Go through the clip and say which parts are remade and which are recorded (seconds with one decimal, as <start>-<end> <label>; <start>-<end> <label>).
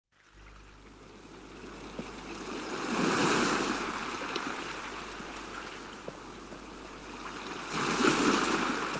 0.0-9.0 recorded